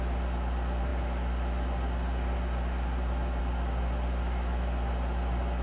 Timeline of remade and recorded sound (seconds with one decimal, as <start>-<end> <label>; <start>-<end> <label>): 0.0-5.6 recorded

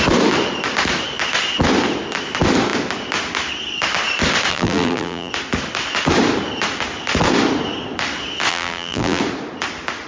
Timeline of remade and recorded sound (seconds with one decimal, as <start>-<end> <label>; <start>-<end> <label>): 0.0-4.5 recorded; 4.5-5.3 remade; 5.3-8.5 recorded; 8.5-9.2 remade; 9.2-10.1 recorded